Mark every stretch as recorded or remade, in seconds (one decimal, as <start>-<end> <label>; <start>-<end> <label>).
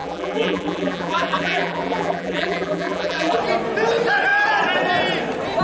0.0-3.4 remade; 3.4-5.6 recorded